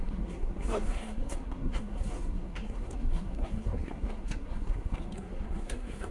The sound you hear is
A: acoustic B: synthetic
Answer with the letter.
B